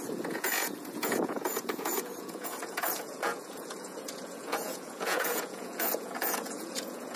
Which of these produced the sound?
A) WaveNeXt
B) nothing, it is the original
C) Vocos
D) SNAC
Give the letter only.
C